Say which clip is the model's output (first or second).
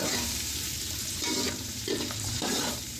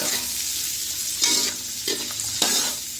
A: first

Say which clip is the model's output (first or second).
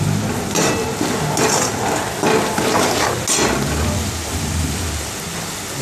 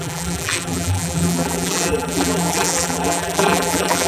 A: second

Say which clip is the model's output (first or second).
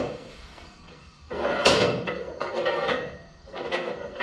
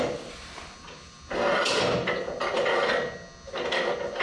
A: first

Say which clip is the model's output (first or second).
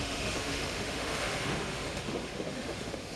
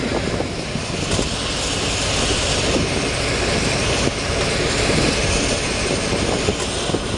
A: first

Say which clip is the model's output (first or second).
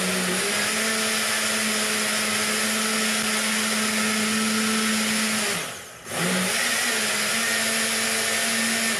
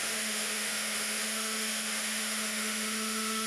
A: second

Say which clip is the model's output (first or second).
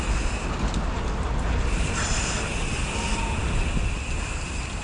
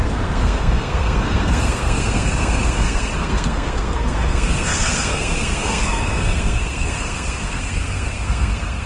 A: second